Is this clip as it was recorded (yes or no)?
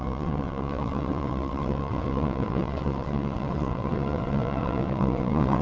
no